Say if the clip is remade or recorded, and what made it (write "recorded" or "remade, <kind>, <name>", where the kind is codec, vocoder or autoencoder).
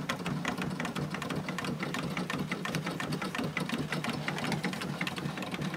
recorded